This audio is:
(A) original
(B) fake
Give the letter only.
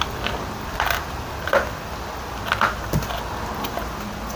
A